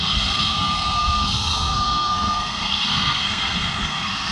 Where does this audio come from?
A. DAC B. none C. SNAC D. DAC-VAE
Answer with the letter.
C